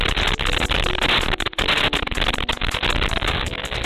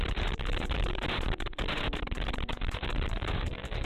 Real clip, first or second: first